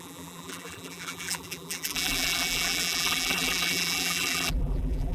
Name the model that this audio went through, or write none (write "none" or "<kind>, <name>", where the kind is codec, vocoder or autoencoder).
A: vocoder, BigVGAN v2